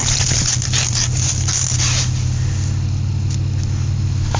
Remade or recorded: recorded